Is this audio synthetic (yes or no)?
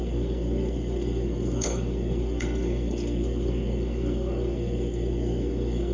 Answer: yes